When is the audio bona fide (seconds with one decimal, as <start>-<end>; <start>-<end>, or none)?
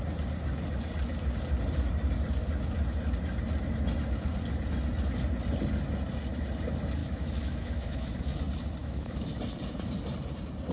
0.0-7.0; 8.4-8.8; 9.3-10.7